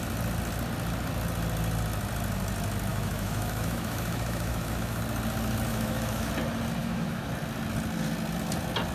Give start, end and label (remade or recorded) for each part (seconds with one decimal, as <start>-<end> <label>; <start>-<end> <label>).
0.0-2.9 recorded; 2.9-5.0 remade; 5.0-5.7 recorded; 5.7-6.3 remade; 6.3-6.8 recorded; 6.8-7.3 remade; 7.3-8.9 recorded